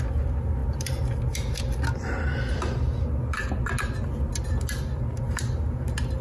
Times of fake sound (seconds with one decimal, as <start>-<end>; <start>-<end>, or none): none